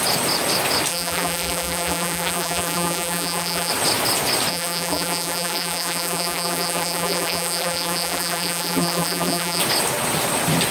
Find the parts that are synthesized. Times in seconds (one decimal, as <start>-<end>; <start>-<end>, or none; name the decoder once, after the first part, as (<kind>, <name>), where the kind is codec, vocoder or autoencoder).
0.9-3.7 (vocoder, BigVGAN v2); 4.5-9.6